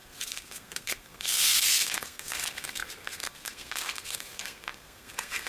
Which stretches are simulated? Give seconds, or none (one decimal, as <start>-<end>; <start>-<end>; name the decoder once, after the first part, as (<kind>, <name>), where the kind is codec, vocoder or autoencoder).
0.0-5.5 (codec, SNAC)